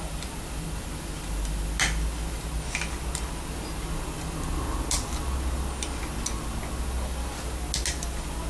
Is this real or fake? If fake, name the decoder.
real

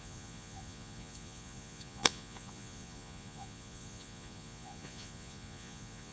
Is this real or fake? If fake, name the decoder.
fake, vocoder, Vocos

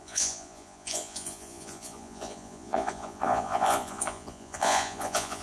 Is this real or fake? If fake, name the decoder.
fake, vocoder, Vocos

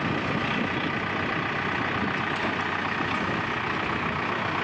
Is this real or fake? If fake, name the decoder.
real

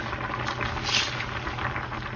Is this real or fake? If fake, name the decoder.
real